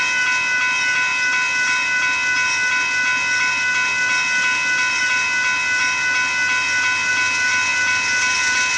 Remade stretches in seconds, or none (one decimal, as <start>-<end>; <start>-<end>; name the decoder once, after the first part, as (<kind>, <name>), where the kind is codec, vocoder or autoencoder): none